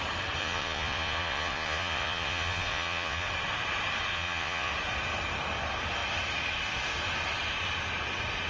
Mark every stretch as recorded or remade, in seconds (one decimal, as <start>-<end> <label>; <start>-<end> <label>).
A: 0.0-0.4 recorded; 0.4-3.3 remade; 3.3-4.1 recorded; 4.1-4.7 remade; 4.7-8.5 recorded